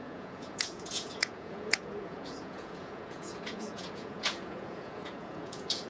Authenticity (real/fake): fake